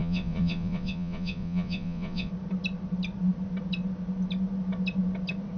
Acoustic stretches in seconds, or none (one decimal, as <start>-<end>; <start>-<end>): 2.3-5.6